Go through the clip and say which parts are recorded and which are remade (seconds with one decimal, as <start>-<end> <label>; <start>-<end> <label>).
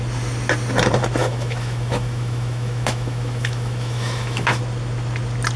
0.0-1.2 recorded; 1.2-4.6 remade; 4.6-5.6 recorded